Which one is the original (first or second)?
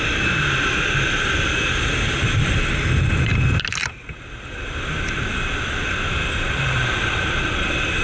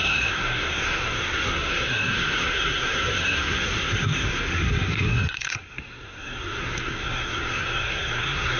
first